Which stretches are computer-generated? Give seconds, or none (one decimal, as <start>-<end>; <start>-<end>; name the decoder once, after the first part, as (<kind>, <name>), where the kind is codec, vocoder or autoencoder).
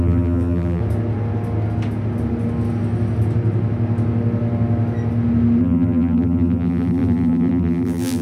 0.0-0.8 (vocoder, BigVGAN v2); 5.6-8.2